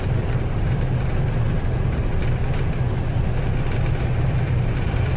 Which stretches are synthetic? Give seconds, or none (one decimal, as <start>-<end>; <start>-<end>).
0.0-2.4; 4.0-5.2